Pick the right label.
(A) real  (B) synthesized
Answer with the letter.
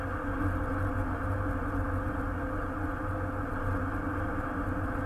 A